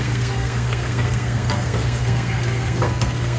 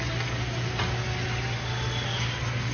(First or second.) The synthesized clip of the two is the first